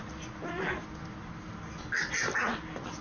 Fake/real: real